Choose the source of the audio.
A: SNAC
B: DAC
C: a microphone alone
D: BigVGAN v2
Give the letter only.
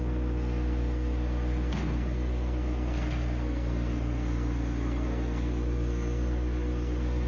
A